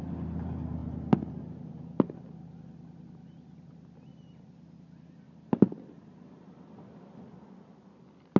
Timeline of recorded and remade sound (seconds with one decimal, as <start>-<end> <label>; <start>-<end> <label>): 0.0-8.4 recorded